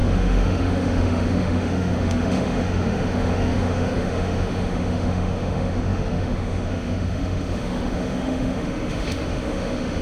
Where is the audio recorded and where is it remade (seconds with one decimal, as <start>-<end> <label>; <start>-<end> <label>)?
0.0-10.0 remade